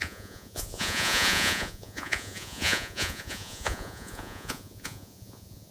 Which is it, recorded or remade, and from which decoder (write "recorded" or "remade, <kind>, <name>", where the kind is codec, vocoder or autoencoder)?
remade, vocoder, Vocos